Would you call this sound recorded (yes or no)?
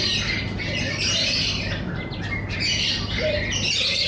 yes